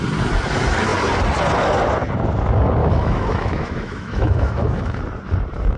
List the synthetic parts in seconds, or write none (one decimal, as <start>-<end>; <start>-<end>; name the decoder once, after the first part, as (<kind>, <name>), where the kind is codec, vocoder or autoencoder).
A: 2.8-5.0 (autoencoder, DAC-VAE)